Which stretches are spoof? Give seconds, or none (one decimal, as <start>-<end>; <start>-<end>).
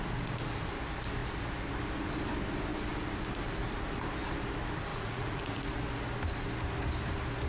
4.9-5.6